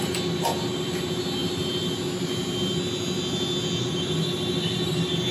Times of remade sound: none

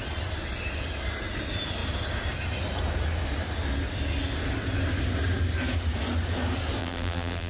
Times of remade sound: 6.8-7.5 (vocoder, BigVGAN v2)